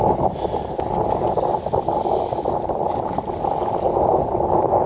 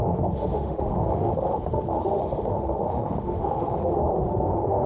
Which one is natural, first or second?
first